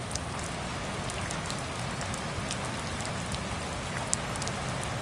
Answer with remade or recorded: recorded